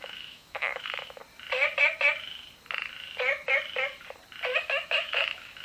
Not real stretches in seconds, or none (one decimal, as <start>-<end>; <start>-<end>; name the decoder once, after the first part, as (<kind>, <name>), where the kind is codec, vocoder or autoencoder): 0.0-1.2 (autoencoder, DAC-VAE); 4.6-5.6